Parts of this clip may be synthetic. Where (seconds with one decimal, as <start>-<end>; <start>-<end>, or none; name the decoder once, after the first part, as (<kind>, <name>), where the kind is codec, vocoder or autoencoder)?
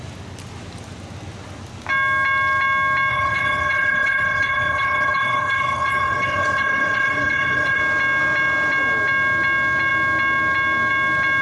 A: 3.1-7.8 (codec, HILCodec)